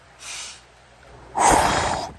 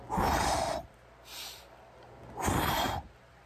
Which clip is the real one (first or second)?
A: second